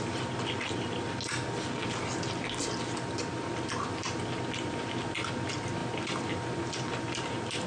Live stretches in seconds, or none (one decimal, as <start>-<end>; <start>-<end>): 0.0-7.7

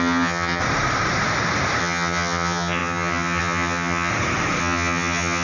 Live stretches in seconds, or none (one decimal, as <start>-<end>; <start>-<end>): 0.6-1.8; 4.1-4.6

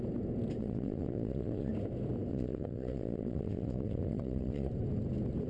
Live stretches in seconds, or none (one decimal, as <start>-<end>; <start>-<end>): 0.0-0.6; 1.7-2.3; 4.7-5.5

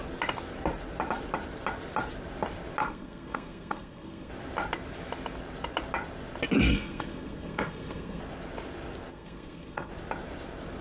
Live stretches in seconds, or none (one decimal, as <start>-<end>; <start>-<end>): 0.0-2.8; 4.3-6.7; 8.2-9.1; 9.9-10.8

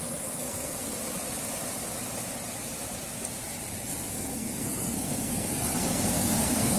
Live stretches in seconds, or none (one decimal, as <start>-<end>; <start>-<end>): 1.0-4.1

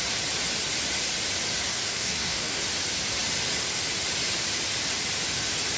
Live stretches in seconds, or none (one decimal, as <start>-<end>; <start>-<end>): 0.0-1.7; 2.6-5.8